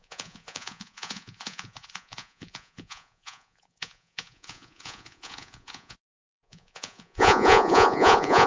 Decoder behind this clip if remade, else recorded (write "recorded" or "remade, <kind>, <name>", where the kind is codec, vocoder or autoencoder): remade, vocoder, Vocos